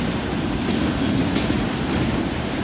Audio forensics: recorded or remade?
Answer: recorded